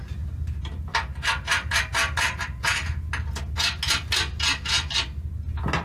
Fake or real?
real